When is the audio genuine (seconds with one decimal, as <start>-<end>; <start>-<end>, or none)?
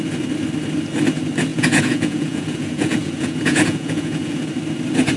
0.0-1.5; 4.5-5.2